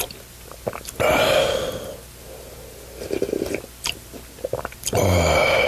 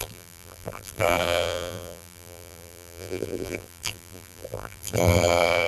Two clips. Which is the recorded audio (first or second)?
first